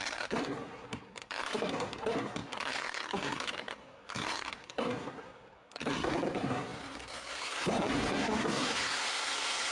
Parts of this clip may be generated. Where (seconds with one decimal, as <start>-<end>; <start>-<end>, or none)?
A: 0.0-9.7